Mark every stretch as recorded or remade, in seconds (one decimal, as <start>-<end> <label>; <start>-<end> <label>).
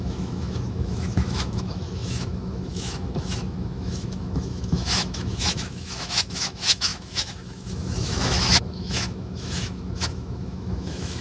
0.0-11.2 remade